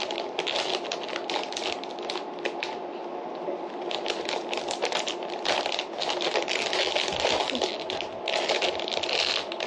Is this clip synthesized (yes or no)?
no